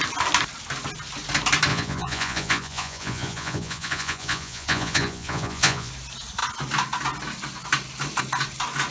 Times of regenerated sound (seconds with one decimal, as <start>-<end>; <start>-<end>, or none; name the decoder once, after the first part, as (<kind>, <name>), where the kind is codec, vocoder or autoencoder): 1.7-5.9 (vocoder, Vocos)